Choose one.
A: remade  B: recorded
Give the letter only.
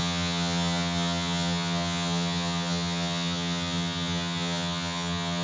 A